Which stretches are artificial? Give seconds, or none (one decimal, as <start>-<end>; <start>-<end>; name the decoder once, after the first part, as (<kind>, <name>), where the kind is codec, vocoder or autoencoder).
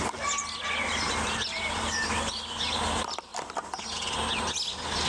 none